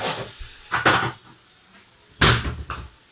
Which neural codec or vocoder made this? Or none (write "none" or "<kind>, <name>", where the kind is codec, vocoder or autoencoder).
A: none